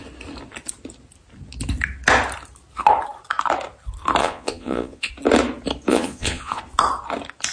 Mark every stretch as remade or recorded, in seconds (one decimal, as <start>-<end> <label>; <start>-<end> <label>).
0.0-4.2 recorded; 4.2-5.1 remade; 5.1-5.9 recorded; 5.9-6.6 remade; 6.6-7.5 recorded